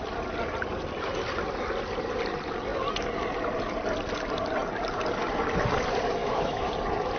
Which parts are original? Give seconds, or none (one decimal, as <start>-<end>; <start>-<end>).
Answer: 0.0-6.2; 6.7-7.2